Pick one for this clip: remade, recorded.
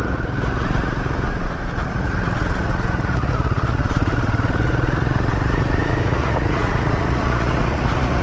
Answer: remade